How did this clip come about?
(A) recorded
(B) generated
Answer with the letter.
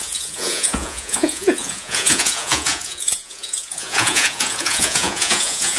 B